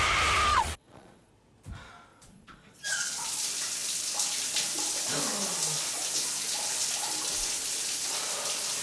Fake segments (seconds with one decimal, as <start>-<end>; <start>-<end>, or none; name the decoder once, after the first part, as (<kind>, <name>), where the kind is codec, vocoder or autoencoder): 0.5-1.3 (vocoder, Vocos); 2.1-3.3